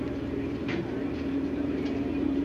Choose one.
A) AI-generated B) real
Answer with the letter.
A